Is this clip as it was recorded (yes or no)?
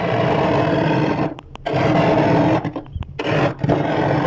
yes